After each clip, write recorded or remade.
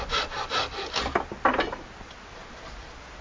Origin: recorded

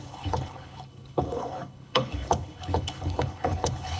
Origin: remade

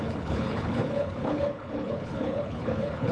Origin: remade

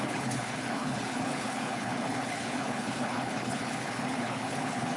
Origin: remade